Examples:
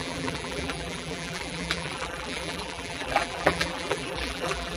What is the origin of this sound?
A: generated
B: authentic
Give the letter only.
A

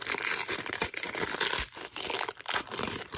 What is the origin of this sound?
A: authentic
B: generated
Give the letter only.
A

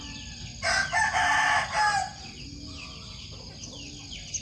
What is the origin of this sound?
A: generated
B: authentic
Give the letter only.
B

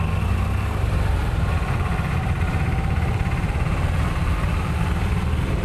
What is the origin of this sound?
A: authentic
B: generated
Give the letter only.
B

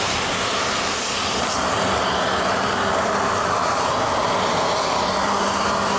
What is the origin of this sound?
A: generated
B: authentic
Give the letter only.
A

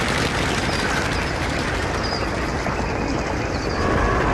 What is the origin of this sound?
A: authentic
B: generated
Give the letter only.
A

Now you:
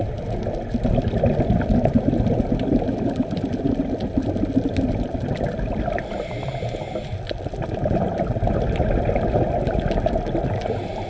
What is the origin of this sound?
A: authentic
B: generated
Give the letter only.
A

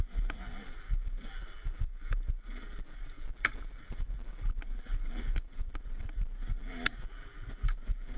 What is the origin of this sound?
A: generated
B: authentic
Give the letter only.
A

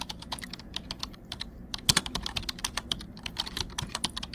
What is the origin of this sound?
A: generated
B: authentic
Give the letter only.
A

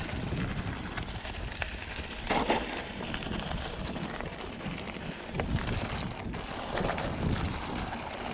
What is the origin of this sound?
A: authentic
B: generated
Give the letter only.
B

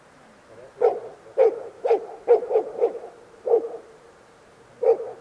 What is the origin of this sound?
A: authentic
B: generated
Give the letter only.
B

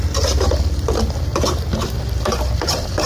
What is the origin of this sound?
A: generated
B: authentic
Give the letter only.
B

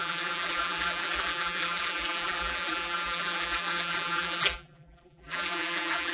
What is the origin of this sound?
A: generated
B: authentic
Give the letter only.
A